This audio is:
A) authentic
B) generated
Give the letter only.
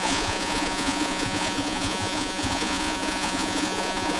B